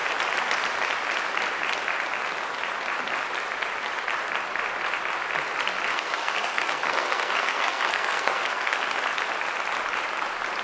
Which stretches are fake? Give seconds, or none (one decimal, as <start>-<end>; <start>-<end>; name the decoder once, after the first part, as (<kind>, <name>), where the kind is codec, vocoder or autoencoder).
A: 5.9-8.8 (codec, SNAC)